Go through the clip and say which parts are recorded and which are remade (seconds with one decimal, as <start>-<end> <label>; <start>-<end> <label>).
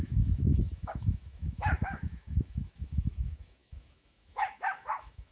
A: 0.0-5.3 remade